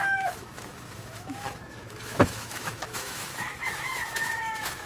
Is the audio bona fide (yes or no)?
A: no